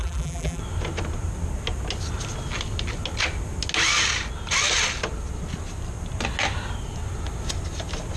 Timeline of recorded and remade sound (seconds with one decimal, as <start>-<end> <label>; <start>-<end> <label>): 0.0-0.6 remade; 0.6-8.2 recorded